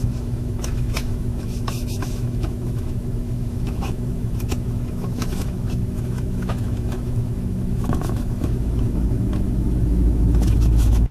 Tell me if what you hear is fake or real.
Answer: fake